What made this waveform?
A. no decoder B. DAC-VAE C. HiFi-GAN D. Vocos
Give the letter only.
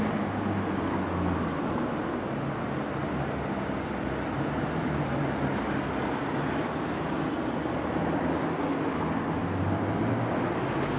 A